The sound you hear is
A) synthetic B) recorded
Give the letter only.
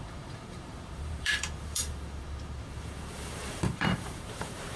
A